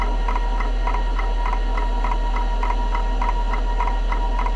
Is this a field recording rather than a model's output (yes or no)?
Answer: yes